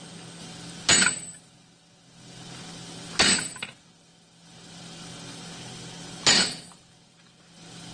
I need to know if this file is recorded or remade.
recorded